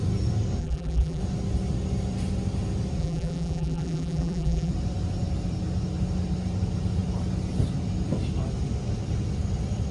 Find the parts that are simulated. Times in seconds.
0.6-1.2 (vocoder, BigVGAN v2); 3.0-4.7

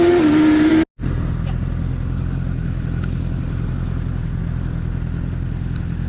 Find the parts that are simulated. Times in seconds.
0.0-0.7 (vocoder, BigVGAN v2); 3.4-4.4

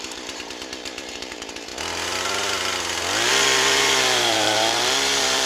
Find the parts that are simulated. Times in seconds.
0.0-1.7 (vocoder, BigVGAN v2); 3.3-5.5

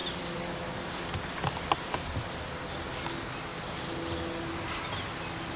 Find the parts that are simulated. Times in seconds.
0.0-1.0 (vocoder, BigVGAN v2)

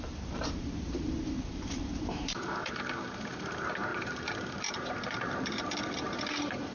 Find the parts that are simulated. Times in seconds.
0.0-6.7 (vocoder, BigVGAN v2)

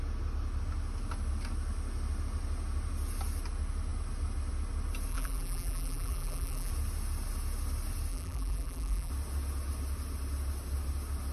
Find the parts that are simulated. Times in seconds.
5.1-6.7 (vocoder, BigVGAN v2); 8.1-9.1

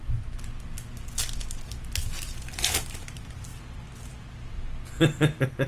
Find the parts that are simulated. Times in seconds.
3.5-4.5 (vocoder, BigVGAN v2)

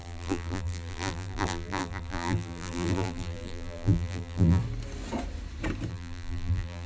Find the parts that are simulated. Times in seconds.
0.0-4.6 (vocoder, BigVGAN v2); 5.9-6.9